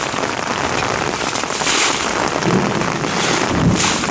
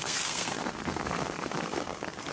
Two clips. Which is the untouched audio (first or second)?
first